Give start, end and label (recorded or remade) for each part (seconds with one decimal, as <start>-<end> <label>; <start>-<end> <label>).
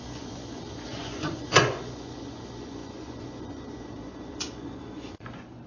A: 0.0-5.7 remade